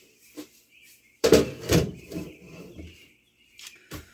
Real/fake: fake